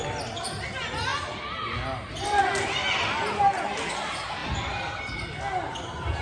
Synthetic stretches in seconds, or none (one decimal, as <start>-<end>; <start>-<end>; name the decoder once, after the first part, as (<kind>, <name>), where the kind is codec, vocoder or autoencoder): none